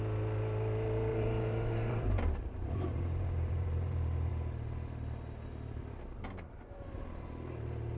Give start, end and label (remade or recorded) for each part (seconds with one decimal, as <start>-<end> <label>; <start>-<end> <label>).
0.0-1.1 recorded; 1.1-4.3 remade; 4.3-8.0 recorded